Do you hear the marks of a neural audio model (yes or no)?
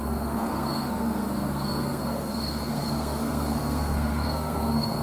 yes